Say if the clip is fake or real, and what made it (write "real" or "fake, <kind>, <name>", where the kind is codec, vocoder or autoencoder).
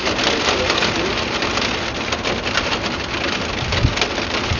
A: real